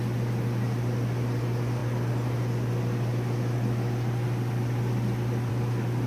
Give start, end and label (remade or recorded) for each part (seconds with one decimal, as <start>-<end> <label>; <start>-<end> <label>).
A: 0.0-6.1 recorded